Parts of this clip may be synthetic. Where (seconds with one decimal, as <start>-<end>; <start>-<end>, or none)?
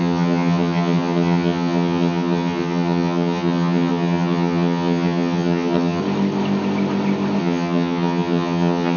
0.0-6.0; 7.4-9.0